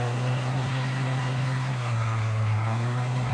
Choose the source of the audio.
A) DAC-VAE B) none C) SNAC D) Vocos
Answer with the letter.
C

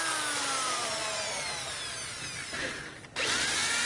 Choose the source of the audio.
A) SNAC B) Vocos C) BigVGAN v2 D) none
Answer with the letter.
D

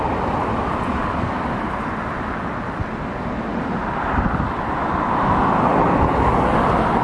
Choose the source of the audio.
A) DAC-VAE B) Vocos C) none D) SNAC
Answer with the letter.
C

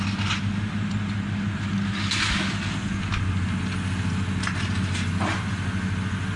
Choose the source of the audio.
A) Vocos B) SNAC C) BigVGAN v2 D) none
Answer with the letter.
D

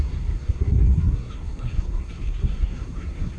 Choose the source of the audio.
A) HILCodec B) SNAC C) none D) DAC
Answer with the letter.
B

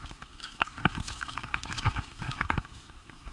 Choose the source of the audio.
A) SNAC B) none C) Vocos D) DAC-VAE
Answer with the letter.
A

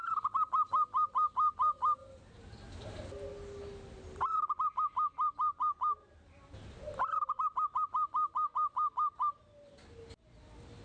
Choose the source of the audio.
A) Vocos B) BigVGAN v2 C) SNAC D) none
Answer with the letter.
D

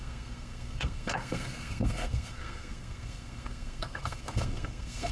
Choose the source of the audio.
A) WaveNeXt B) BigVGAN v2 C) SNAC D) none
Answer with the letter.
C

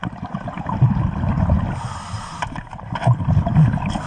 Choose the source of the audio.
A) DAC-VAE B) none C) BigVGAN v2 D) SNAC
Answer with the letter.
B